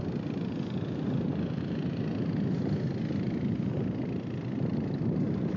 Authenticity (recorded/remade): recorded